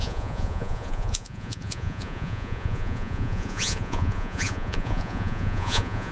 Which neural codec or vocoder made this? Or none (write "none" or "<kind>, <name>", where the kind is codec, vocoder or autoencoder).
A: vocoder, Vocos